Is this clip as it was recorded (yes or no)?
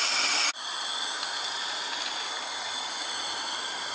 yes